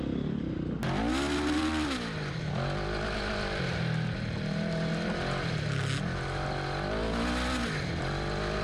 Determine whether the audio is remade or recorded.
recorded